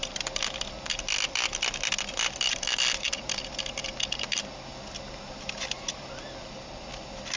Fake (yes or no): no